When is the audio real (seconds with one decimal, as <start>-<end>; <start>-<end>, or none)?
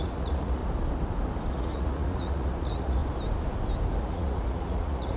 0.6-1.5; 3.0-4.0